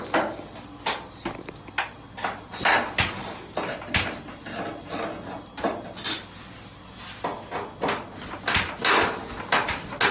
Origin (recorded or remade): recorded